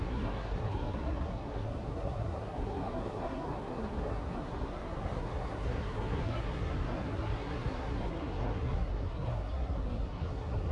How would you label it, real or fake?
fake